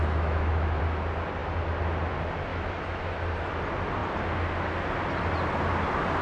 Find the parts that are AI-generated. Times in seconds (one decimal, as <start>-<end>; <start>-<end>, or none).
0.0-0.8; 2.5-3.2